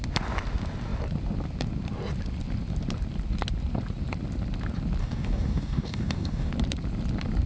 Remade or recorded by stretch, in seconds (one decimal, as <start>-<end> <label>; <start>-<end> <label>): 0.0-5.0 recorded; 5.0-6.5 remade; 6.5-7.5 recorded